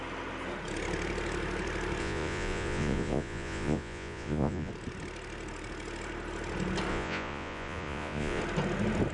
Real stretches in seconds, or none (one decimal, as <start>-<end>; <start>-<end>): 0.0-2.0; 4.7-6.9; 8.4-9.1